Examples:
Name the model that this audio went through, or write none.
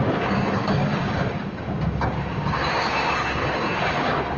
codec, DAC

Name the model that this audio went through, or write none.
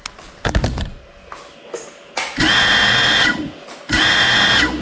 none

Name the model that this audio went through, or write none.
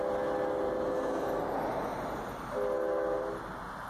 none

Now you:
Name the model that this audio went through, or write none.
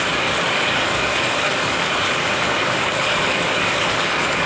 codec, DAC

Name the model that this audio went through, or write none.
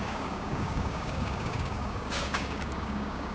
codec, DAC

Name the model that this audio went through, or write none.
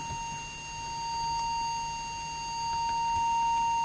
none